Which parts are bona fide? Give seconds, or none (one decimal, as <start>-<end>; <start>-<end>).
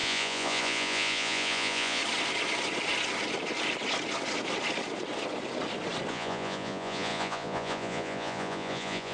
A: 2.0-6.1